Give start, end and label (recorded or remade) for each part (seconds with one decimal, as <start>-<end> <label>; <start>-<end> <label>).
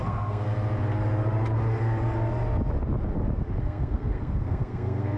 0.0-0.5 remade; 0.5-3.6 recorded; 3.6-5.2 remade